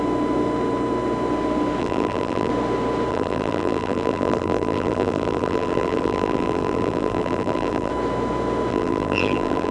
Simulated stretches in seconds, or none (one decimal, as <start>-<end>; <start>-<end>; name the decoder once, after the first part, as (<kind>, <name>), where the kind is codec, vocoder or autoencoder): 1.8-2.5 (vocoder, BigVGAN v2); 3.1-7.9; 8.7-9.7